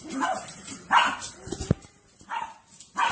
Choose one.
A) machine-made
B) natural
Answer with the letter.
B